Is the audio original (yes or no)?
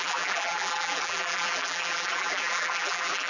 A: no